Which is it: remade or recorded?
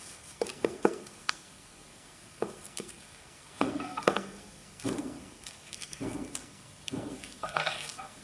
remade